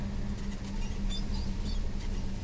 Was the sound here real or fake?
real